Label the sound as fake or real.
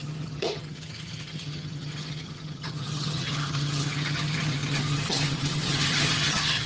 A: fake